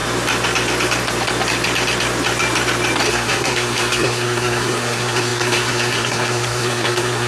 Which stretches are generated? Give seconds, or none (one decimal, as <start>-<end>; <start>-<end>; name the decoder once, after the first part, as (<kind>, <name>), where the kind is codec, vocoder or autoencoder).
3.1-7.3 (codec, SNAC)